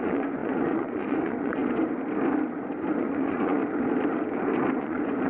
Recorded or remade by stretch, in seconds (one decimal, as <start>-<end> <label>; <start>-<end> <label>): 0.0-1.6 remade; 1.6-3.0 recorded; 3.0-3.6 remade; 3.6-4.7 recorded; 4.7-5.3 remade